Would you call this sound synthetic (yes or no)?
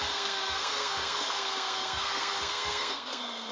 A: yes